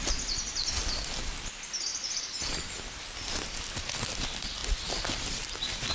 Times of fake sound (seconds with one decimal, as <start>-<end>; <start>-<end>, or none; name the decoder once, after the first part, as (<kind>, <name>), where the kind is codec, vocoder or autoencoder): 1.9-2.7 (vocoder, BigVGAN v2)